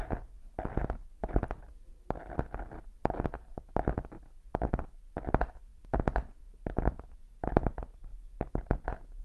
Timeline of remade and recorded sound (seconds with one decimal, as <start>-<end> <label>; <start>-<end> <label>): 0.0-9.2 recorded